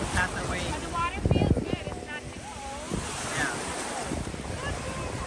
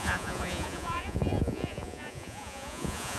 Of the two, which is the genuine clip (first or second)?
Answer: first